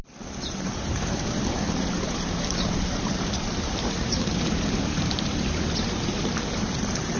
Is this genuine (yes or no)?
no